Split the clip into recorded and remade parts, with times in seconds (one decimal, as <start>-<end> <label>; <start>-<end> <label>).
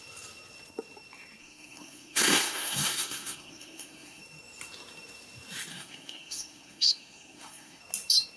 0.0-1.4 recorded; 1.4-4.2 remade; 4.2-5.7 recorded; 5.7-7.8 remade; 7.8-8.4 recorded